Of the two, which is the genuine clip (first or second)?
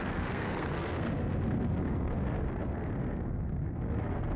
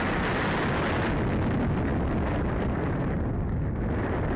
second